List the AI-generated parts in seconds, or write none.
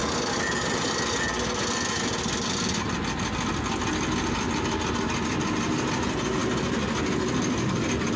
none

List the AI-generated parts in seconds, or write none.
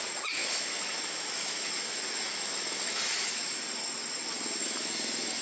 0.4-3.6 (autoencoder, DAC-VAE); 4.6-5.4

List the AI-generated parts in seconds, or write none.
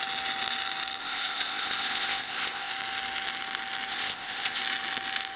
1.0-2.7 (codec, ZipCodec); 3.9-4.6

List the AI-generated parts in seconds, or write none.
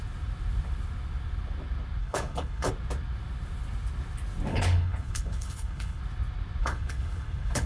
2.0-2.7 (codec, HILCodec); 4.5-6.0; 6.6-7.7